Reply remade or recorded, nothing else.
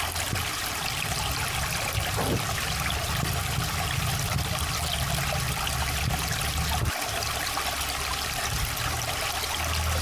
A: recorded